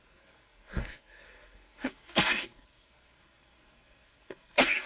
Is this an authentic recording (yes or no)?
no